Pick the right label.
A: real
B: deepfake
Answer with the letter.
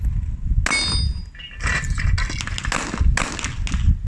A